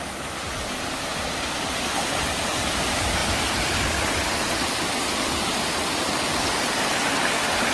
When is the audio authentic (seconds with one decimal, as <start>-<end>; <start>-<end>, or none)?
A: 0.0-7.7